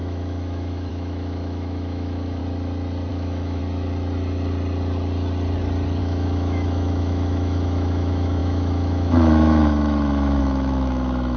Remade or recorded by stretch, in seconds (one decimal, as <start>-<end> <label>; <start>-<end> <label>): 0.0-2.4 remade; 2.4-3.1 recorded; 3.1-3.6 remade; 3.6-6.0 recorded; 6.0-11.4 remade